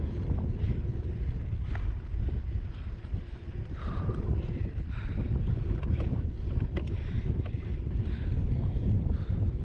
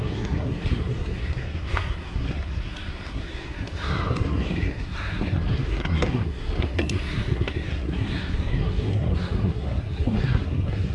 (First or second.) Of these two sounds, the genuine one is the first